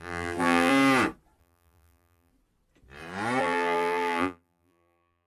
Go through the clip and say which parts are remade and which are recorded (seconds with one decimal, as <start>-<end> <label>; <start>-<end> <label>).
0.0-0.7 remade; 0.7-1.4 recorded; 1.4-2.3 remade; 2.3-3.4 recorded; 3.4-5.3 remade